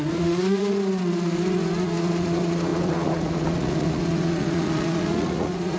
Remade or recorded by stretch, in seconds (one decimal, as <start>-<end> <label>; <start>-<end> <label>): 0.0-1.0 remade; 1.0-1.8 recorded; 1.8-5.8 remade